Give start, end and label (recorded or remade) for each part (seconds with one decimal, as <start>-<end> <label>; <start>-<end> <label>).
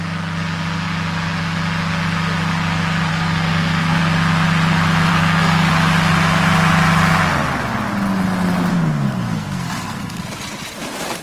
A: 0.0-3.1 recorded; 3.1-4.0 remade; 4.0-5.1 recorded; 5.1-5.7 remade; 5.7-8.7 recorded; 8.7-10.2 remade; 10.2-11.2 recorded